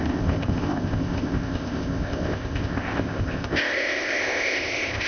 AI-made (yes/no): yes